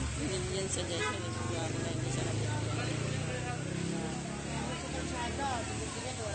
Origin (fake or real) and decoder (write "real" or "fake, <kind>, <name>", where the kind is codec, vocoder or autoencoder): real